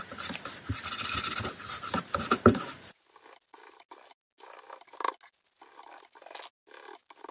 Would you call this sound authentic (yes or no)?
yes